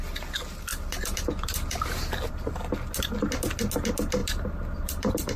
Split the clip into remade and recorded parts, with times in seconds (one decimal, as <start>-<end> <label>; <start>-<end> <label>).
0.0-4.2 recorded; 4.2-5.4 remade